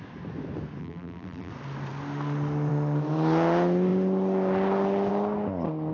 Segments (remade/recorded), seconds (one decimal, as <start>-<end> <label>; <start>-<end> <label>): 0.0-0.8 recorded; 0.8-1.5 remade; 1.5-5.9 recorded